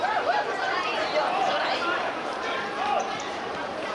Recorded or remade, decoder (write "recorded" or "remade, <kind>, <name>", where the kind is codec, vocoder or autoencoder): remade, vocoder, BigVGAN v2